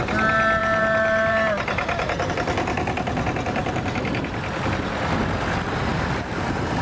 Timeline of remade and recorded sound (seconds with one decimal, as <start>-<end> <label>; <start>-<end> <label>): 0.0-0.6 recorded; 0.6-2.3 remade; 2.3-5.9 recorded; 5.9-6.8 remade